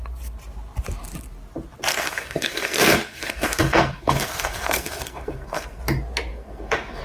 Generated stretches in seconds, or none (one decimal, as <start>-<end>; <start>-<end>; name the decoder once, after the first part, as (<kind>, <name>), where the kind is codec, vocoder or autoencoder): 1.9-5.8 (codec, SNAC); 6.3-7.0